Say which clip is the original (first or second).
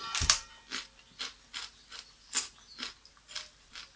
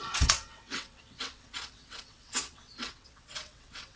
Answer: first